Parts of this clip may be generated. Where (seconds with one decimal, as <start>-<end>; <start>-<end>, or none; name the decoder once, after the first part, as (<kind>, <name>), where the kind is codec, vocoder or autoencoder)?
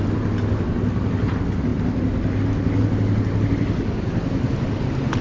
none